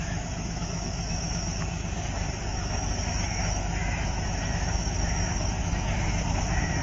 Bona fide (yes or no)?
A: no